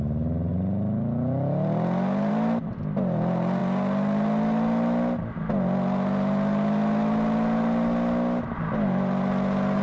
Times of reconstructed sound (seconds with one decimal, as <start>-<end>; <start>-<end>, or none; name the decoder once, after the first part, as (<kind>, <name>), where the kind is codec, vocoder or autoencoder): none